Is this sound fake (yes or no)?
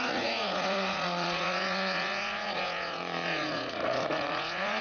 yes